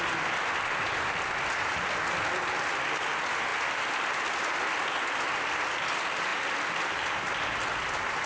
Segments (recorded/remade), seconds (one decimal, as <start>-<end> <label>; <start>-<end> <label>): 0.0-8.3 recorded